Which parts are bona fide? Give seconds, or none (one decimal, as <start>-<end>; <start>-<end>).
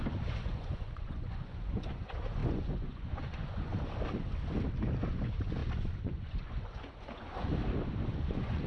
3.7-5.1; 7.5-8.1